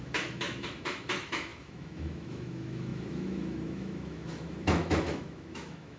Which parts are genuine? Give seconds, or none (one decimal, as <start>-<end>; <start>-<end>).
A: none